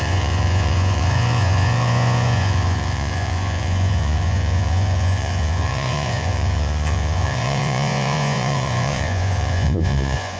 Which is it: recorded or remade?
remade